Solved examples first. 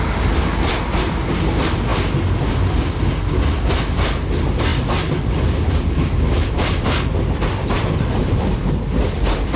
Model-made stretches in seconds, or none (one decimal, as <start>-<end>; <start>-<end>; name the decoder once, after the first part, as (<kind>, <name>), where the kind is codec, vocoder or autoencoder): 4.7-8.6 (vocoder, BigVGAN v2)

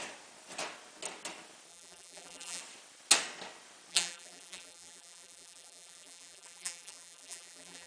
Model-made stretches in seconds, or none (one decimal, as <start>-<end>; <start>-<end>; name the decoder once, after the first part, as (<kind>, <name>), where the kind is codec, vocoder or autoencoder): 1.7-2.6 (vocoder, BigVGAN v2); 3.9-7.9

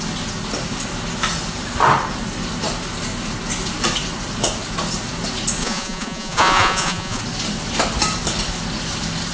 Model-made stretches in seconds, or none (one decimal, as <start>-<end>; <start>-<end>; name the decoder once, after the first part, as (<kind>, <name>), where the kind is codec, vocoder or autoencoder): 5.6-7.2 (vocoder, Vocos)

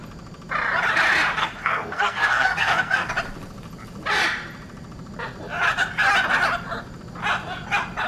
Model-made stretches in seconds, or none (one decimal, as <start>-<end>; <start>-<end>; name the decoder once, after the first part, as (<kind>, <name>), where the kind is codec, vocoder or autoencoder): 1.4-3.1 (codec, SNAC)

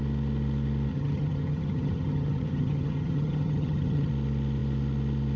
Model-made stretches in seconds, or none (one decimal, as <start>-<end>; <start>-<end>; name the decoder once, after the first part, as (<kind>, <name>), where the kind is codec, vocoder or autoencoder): 0.9-4.1 (vocoder, HiFi-GAN)